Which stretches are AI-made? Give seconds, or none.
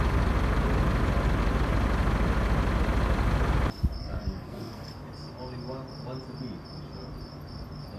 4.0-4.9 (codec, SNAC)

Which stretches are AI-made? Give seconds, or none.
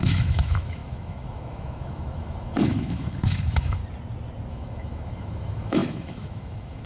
0.0-3.8 (autoencoder, DAC-VAE); 4.5-6.9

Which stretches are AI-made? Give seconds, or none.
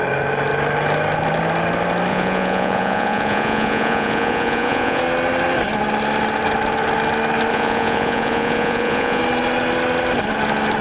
2.1-5.0 (vocoder, Vocos); 7.5-9.2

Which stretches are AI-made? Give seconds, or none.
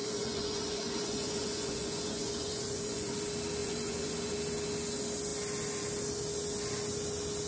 0.0-3.1 (vocoder, Vocos); 3.6-4.3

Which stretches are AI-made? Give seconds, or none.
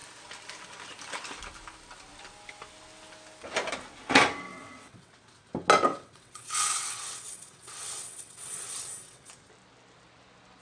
4.5-5.1 (vocoder, WaveNeXt); 5.9-9.3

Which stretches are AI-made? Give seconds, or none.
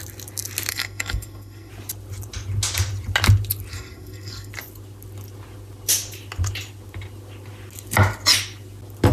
0.7-1.7 (codec, SNAC); 3.7-4.5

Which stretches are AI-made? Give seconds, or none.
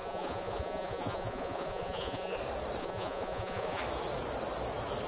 0.0-2.4 (vocoder, Vocos); 2.8-3.8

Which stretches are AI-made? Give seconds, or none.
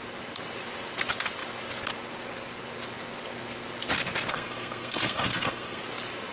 4.3-5.8 (codec, SNAC)